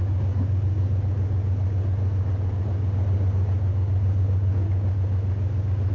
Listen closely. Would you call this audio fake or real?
real